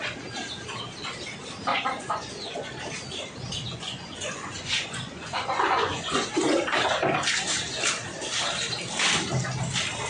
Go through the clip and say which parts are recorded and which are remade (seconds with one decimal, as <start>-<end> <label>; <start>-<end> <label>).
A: 0.0-1.7 recorded; 1.7-2.8 remade; 2.8-3.7 recorded; 3.7-6.3 remade; 6.3-10.1 recorded

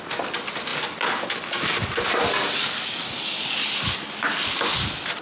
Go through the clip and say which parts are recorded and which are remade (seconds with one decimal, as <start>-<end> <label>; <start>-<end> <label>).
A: 0.0-5.2 recorded

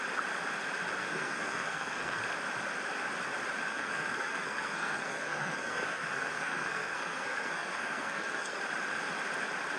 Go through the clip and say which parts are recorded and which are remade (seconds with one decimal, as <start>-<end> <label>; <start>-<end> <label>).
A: 0.0-1.0 recorded; 1.0-2.2 remade; 2.2-3.7 recorded; 3.7-8.6 remade; 8.6-9.8 recorded